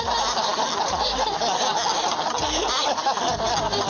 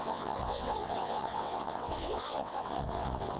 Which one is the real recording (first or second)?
first